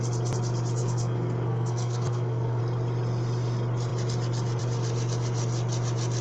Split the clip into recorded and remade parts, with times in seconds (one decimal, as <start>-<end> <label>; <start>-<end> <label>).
0.0-0.8 recorded; 0.8-2.6 remade; 2.6-6.2 recorded